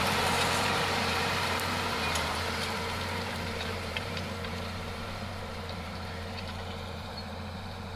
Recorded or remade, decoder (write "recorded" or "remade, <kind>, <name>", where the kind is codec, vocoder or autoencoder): remade, vocoder, BigVGAN v2